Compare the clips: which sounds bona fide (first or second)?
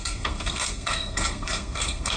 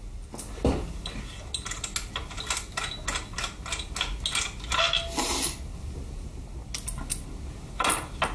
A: second